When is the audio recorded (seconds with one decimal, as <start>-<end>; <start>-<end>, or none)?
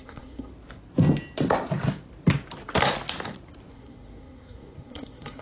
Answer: 0.5-3.7